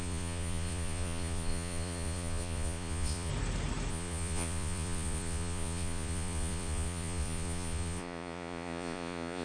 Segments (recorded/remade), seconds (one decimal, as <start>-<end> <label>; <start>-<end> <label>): 0.0-3.3 remade; 3.3-3.9 recorded; 3.9-9.4 remade